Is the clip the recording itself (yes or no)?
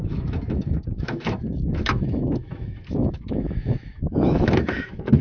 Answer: no